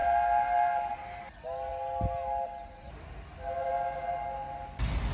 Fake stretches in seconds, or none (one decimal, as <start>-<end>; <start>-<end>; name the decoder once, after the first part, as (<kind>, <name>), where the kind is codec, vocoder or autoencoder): none